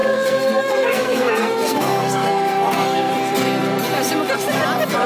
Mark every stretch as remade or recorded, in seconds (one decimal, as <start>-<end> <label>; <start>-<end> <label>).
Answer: 0.0-3.1 remade; 3.1-5.1 recorded